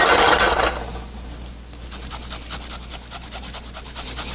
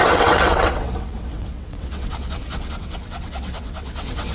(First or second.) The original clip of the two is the first